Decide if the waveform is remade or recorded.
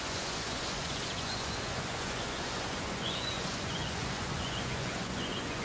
remade